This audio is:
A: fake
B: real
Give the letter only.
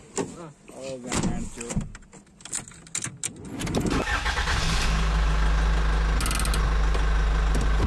B